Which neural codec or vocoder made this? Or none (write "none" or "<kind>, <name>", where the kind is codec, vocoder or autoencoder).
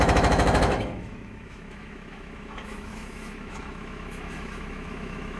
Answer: autoencoder, DAC-VAE